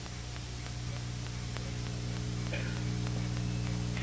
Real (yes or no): yes